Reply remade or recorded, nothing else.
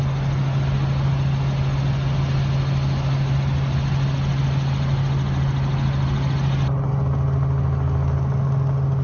recorded